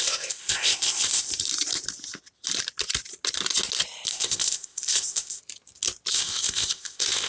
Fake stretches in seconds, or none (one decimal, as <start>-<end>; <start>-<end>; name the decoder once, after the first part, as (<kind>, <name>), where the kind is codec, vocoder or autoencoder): 0.0-1.3 (codec, ZipCodec); 4.1-5.4; 6.1-7.3

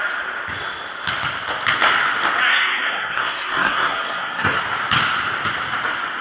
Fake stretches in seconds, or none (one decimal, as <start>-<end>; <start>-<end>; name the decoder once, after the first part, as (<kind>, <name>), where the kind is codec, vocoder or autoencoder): 2.5-4.6 (codec, SNAC)

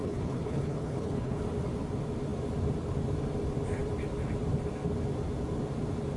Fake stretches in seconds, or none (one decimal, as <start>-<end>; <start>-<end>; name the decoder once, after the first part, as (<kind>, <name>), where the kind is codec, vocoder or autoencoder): 0.0-1.4 (codec, HILCodec)

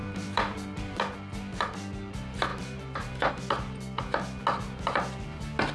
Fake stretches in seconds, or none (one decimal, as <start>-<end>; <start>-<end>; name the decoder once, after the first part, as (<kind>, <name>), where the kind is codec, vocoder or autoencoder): 0.0-1.0 (vocoder, BigVGAN v2); 2.5-3.3

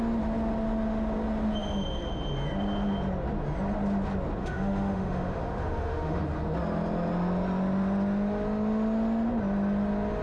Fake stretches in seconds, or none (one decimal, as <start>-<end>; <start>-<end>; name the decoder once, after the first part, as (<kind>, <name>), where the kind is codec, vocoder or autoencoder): 4.4-6.2 (autoencoder, DAC-VAE)

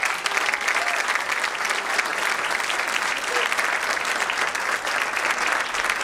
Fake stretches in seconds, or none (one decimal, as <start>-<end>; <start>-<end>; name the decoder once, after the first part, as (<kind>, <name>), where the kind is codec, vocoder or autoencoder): 2.1-4.1 (vocoder, BigVGAN v2)